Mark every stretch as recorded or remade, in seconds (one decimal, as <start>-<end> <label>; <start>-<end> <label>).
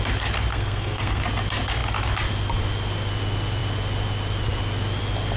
0.0-0.5 recorded; 0.5-1.2 remade; 1.2-5.4 recorded